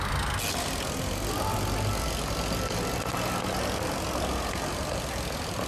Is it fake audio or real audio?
real